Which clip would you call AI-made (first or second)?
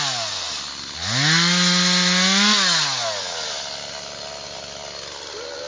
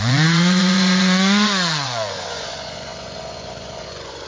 second